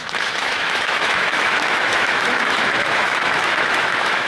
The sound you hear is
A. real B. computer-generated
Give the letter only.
B